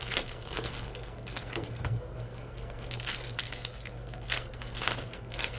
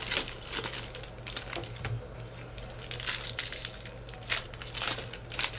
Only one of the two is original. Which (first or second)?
second